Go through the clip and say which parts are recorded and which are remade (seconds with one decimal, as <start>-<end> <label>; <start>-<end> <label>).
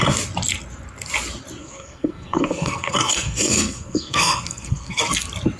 0.0-1.6 recorded; 1.6-5.0 remade; 5.0-5.6 recorded